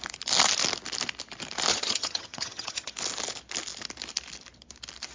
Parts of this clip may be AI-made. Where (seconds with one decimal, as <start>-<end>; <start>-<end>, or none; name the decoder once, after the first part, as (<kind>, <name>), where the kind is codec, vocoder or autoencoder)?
1.7-2.9 (vocoder, HiFi-GAN)